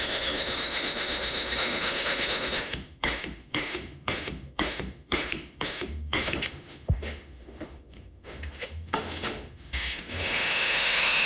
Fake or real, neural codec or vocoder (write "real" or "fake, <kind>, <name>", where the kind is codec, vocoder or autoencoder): fake, autoencoder, DAC-VAE